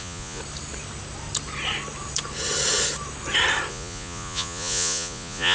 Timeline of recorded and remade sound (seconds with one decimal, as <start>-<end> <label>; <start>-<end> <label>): 0.0-0.4 remade; 0.4-3.7 recorded; 3.7-5.5 remade